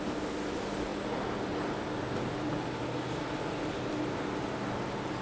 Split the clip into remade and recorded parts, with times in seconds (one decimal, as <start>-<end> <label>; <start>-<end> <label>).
0.0-5.2 recorded